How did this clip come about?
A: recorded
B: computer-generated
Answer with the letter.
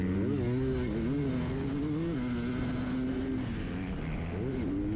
A